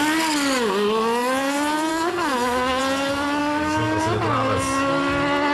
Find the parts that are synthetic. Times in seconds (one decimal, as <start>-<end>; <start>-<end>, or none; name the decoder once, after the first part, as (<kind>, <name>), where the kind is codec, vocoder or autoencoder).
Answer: 1.9-2.8 (codec, SNAC); 3.4-4.0